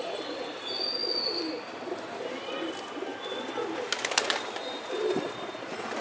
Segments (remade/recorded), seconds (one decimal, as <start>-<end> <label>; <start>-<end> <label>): 0.0-0.6 remade; 0.6-6.0 recorded